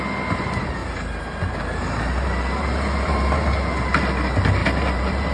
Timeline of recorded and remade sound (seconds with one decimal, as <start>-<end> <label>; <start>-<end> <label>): 0.0-0.8 recorded; 0.8-4.0 remade; 4.0-4.6 recorded; 4.6-5.3 remade